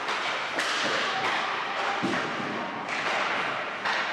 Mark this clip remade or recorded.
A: recorded